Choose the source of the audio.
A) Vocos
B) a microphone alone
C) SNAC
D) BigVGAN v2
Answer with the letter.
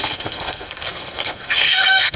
C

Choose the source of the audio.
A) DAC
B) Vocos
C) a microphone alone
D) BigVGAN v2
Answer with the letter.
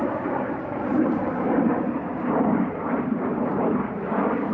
D